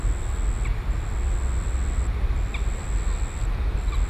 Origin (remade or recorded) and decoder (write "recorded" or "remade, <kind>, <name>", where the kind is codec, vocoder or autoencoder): recorded